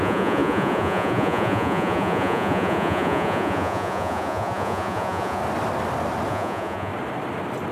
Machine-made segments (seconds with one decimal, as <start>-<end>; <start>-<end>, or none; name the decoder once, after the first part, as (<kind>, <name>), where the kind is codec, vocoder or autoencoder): 0.0-5.4 (vocoder, Vocos); 6.3-6.9